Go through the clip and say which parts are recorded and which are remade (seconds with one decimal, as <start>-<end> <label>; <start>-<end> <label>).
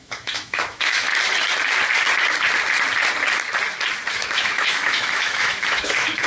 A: 0.0-1.1 remade; 1.1-4.1 recorded; 4.1-6.3 remade